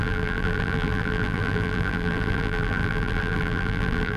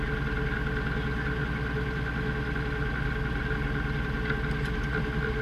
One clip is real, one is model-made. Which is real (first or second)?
second